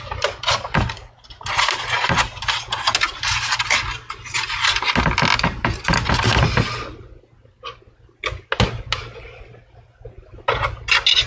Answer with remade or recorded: recorded